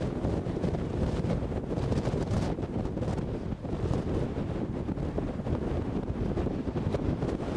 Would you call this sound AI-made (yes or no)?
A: no